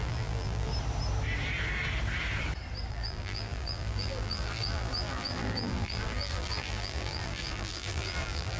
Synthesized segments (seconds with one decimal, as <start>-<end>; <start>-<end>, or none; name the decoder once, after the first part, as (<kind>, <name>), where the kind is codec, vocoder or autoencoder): 0.0-0.7 (vocoder, BigVGAN v2); 2.9-8.6